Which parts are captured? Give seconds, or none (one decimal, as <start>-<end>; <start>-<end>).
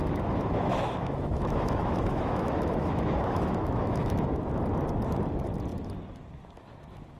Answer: 4.3-7.2